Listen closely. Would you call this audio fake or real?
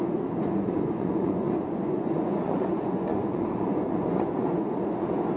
fake